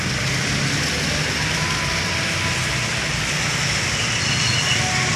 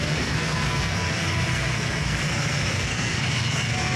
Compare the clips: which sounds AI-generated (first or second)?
second